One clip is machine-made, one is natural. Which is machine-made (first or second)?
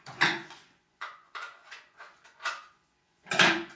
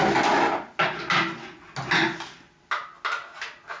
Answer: first